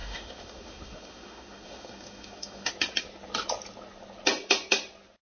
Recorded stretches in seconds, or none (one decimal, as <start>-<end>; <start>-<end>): 2.7-5.2